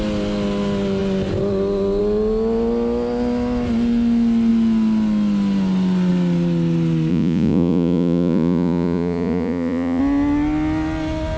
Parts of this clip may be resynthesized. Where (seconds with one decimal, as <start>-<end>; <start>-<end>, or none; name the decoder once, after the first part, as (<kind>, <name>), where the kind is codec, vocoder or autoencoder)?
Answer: 7.1-10.0 (vocoder, Vocos)